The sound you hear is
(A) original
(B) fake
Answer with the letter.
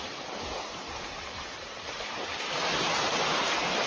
A